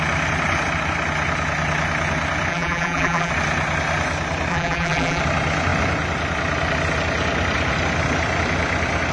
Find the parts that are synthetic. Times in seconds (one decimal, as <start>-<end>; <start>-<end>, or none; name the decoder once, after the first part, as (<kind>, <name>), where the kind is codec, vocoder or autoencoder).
2.5-3.3 (vocoder, BigVGAN v2); 4.5-5.2